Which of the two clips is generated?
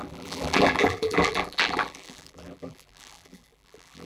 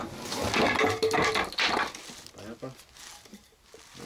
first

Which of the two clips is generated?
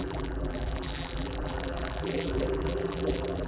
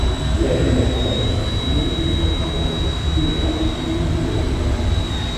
first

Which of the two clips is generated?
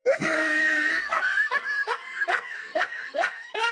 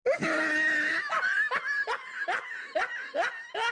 first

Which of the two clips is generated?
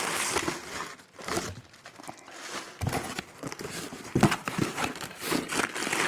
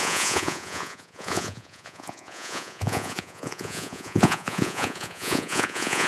second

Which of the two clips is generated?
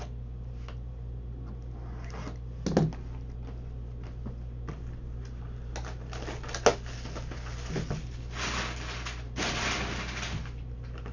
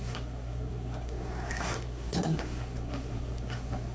second